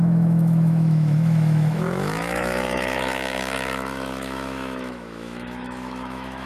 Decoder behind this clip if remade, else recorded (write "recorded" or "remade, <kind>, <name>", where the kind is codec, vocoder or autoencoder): remade, autoencoder, DAC-VAE